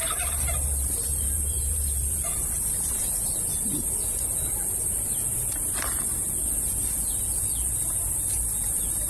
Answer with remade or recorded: remade